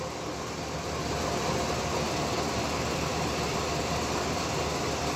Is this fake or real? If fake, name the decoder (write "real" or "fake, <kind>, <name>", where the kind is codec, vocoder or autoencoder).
real